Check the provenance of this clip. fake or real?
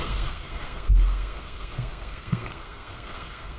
fake